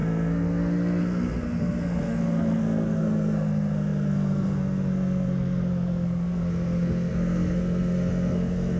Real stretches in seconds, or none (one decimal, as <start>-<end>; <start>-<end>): none